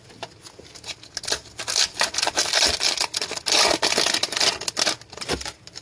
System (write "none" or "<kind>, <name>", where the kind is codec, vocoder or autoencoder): none